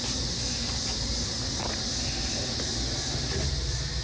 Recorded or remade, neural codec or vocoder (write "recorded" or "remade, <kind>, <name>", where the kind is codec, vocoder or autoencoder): recorded